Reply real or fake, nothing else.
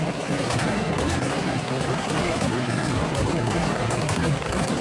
fake